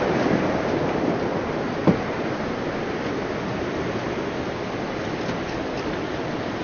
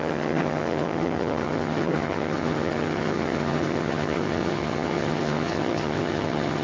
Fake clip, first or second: second